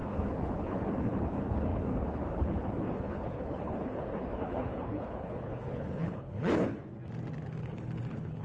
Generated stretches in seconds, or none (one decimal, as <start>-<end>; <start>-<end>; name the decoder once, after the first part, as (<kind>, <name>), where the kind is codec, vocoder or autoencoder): 0.0-6.8 (codec, HILCodec); 7.6-8.4

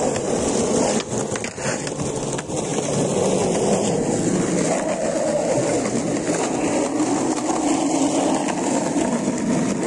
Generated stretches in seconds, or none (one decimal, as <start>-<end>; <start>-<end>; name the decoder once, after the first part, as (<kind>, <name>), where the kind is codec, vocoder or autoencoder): none

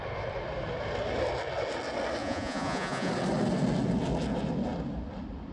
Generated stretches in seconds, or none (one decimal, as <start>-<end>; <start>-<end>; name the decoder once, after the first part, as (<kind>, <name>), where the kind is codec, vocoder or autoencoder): 2.2-3.1 (vocoder, Vocos)

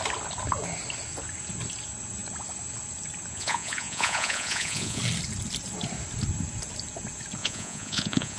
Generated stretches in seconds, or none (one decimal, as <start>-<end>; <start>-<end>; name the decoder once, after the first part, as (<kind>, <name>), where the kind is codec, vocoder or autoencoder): 3.3-5.0 (vocoder, Vocos); 7.4-8.4

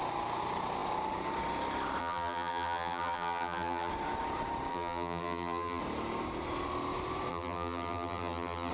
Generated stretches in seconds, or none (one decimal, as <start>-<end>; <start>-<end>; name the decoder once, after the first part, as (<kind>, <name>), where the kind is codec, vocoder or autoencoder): 2.0-3.9 (vocoder, BigVGAN v2); 4.7-5.8; 7.3-8.7